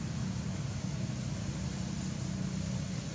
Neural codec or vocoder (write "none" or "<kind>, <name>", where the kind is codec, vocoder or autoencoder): none